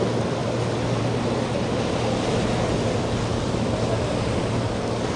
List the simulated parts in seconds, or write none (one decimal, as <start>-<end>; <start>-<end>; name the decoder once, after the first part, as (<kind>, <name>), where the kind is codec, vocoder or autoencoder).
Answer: none